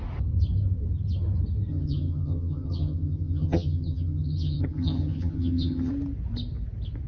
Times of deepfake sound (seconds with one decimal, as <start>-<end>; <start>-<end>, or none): 1.7-5.9